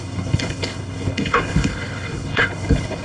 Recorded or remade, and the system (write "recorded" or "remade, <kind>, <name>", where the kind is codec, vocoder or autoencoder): remade, codec, HILCodec